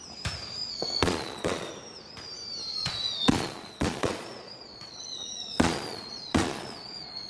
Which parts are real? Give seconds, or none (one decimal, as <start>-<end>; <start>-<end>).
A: 0.0-0.6; 1.7-2.7